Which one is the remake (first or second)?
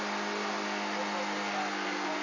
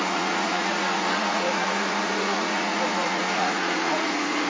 second